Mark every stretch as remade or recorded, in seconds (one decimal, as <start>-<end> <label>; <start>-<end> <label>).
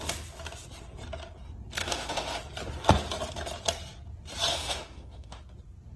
0.0-1.8 recorded; 1.8-2.4 remade; 2.4-4.5 recorded; 4.5-5.4 remade; 5.4-6.0 recorded